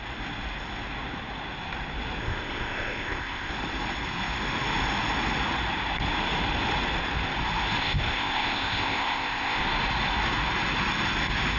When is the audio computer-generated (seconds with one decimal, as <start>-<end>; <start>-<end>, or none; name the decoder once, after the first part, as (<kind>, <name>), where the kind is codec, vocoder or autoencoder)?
2.2-3.5 (codec, ZipCodec); 7.8-9.6